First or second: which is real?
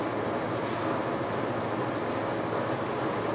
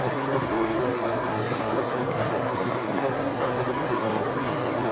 first